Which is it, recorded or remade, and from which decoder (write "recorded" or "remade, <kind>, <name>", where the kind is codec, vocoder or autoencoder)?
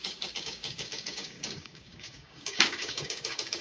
remade, codec, DAC